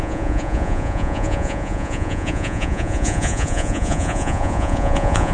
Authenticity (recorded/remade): remade